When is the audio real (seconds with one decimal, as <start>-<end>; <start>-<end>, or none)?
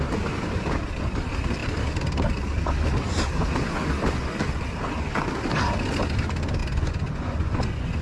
0.0-6.6